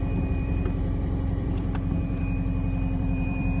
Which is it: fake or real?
fake